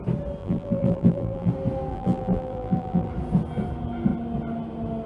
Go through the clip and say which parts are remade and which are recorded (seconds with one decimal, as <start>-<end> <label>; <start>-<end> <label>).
0.0-0.4 recorded; 0.4-1.5 remade; 1.5-1.9 recorded; 1.9-3.1 remade; 3.1-5.1 recorded